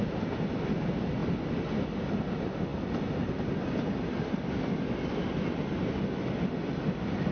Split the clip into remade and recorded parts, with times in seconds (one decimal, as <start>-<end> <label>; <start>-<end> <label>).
0.0-0.6 remade; 0.6-7.3 recorded